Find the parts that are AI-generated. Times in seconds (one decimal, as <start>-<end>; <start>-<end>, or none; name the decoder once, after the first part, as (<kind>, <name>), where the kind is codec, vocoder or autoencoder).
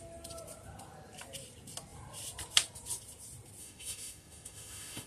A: 3.6-5.1 (autoencoder, DAC-VAE)